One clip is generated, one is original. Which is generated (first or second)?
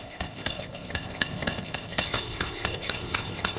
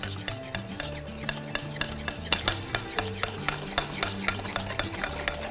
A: first